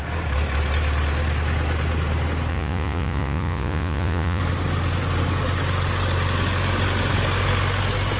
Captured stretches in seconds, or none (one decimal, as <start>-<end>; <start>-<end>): 0.0-2.5; 4.4-8.2